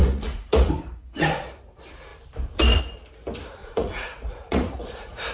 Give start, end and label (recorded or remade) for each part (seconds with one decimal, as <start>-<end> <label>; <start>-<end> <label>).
0.0-1.4 remade; 1.4-3.6 recorded; 3.6-5.3 remade